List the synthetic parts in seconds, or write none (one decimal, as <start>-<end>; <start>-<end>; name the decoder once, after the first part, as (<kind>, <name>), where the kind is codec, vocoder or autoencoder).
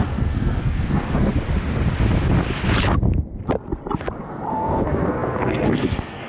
0.0-1.3 (codec, SNAC); 4.2-6.3